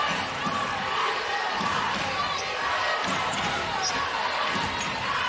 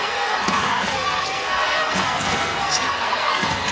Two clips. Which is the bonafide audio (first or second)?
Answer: first